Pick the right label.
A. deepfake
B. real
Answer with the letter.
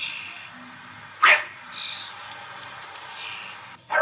B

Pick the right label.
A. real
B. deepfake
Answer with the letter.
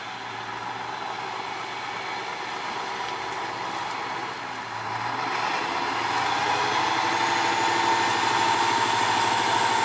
A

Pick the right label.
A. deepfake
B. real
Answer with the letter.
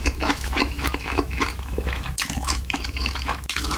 A